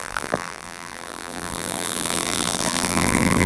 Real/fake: fake